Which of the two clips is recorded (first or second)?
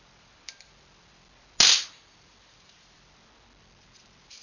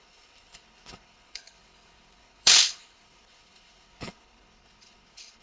first